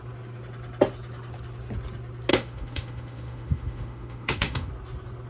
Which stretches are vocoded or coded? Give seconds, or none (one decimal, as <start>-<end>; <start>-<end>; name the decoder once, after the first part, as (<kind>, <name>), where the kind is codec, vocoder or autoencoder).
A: 2.3-4.7 (autoencoder, DAC-VAE)